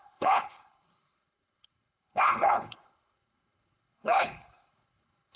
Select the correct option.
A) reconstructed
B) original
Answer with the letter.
A